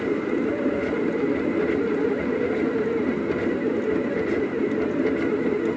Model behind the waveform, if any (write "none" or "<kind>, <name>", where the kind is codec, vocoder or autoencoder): none